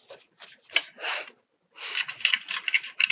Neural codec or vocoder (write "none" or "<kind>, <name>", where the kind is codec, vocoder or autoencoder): none